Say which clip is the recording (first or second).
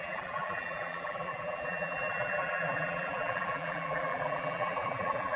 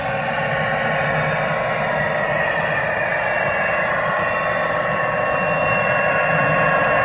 second